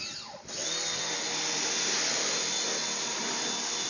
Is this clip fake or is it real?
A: real